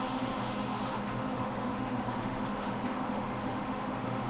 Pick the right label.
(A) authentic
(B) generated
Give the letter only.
B